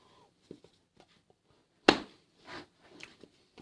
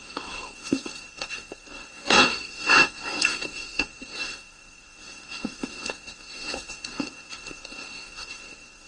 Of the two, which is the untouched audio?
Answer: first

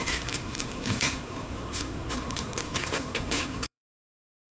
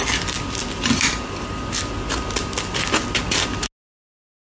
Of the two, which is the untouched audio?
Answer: second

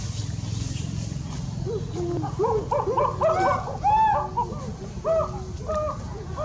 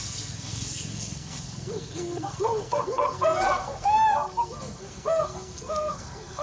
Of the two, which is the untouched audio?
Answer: first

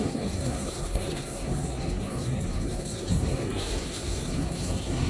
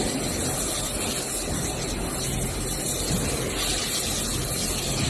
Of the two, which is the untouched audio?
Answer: second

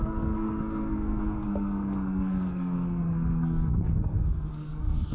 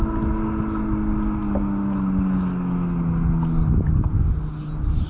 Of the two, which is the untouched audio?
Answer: second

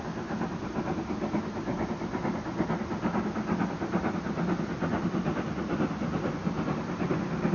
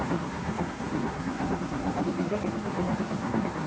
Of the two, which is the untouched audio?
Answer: first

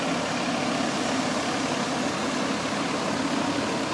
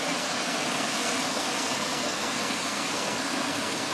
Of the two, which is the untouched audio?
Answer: first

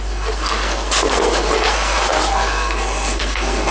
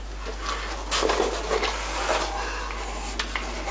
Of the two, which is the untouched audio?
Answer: second